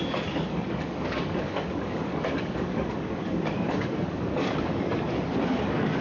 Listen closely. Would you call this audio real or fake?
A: fake